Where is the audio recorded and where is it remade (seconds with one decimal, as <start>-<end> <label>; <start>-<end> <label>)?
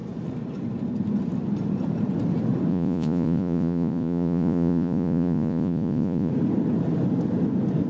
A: 0.0-2.7 recorded; 2.7-6.3 remade; 6.3-7.9 recorded